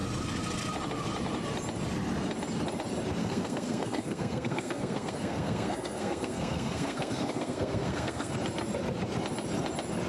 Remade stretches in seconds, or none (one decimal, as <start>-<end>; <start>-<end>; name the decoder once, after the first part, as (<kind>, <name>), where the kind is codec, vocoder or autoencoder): 3.2-8.3 (codec, SNAC)